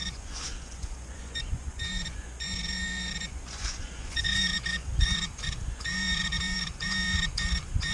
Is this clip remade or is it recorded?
remade